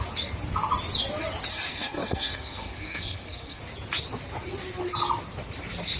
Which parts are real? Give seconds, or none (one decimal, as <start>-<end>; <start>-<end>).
0.0-1.5; 3.6-6.0